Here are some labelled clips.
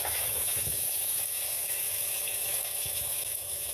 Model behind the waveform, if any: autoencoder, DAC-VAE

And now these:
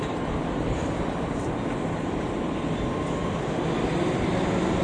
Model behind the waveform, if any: vocoder, BigVGAN v2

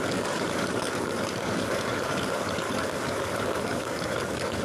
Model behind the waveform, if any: codec, DAC